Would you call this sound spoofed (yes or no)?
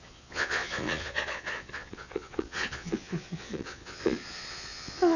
yes